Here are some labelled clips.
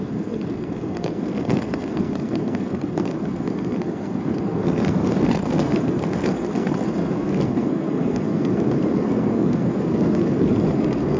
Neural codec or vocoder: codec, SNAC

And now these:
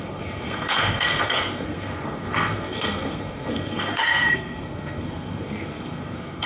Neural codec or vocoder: codec, SNAC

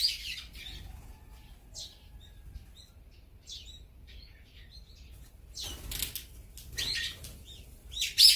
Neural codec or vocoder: none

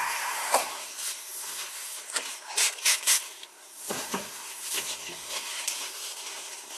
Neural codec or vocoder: codec, SNAC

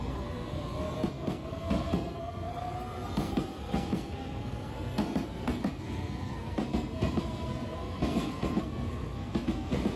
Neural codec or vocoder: codec, SNAC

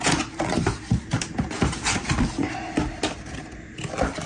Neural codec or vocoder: none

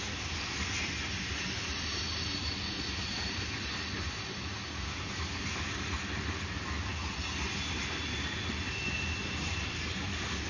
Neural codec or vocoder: none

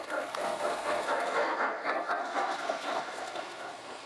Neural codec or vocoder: codec, SNAC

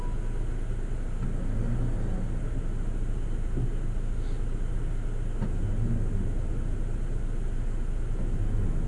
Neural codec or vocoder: none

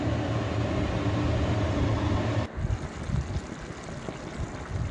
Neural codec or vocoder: none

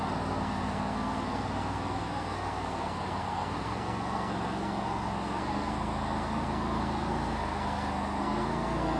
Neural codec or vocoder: codec, SNAC